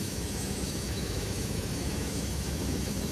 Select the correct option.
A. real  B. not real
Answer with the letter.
B